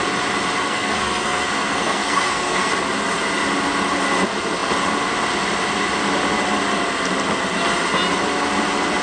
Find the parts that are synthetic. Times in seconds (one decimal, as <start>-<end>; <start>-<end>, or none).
0.6-2.7

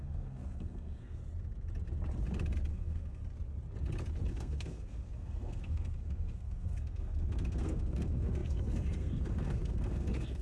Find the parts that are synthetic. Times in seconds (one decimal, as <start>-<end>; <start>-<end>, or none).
0.0-1.2; 2.7-3.2; 4.3-10.4